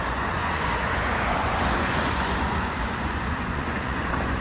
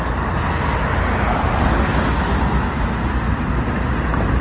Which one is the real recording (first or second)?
second